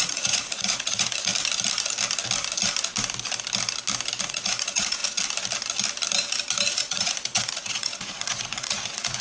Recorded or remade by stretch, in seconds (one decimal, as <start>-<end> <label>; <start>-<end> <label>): 0.0-1.3 remade; 1.3-4.2 recorded; 4.2-5.0 remade; 5.0-6.8 recorded; 6.8-9.2 remade